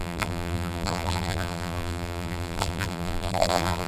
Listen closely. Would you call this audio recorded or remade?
remade